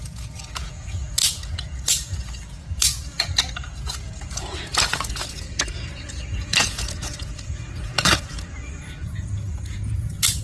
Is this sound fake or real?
fake